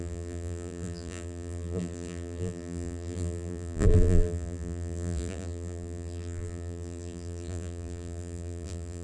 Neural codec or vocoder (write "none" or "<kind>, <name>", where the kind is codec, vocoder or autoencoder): vocoder, BigVGAN v2